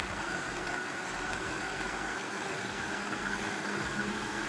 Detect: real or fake fake